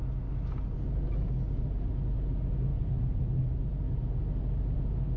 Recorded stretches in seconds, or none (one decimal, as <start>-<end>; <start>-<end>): 0.0-5.2